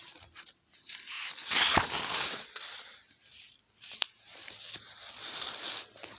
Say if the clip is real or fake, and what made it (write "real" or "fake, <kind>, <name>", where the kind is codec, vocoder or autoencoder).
real